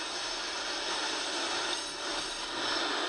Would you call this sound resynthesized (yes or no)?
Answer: no